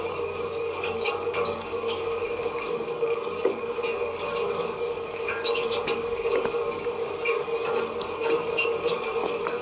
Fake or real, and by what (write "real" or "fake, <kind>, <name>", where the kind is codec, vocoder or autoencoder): fake, codec, DAC